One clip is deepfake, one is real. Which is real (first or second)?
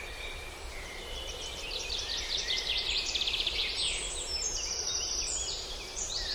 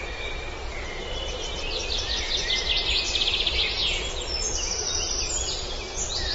second